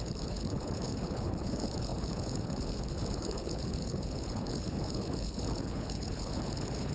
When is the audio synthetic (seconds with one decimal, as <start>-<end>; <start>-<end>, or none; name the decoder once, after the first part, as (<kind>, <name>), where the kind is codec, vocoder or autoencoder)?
0.0-6.9 (codec, HILCodec)

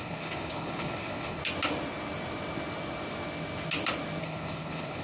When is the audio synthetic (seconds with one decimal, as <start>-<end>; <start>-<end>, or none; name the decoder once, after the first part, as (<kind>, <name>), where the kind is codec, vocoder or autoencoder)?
0.0-1.4 (codec, HILCodec); 4.2-5.0